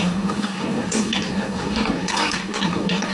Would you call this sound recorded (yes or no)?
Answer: no